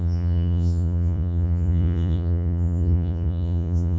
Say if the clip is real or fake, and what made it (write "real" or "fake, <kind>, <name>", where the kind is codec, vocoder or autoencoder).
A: fake, vocoder, Vocos